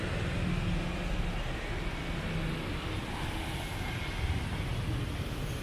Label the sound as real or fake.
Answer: real